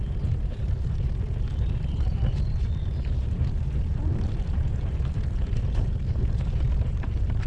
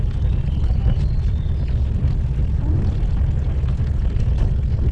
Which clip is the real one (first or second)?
second